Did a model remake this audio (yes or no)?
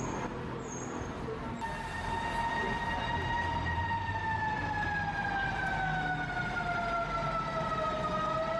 no